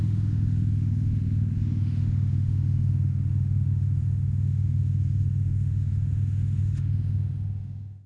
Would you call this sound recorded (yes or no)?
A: no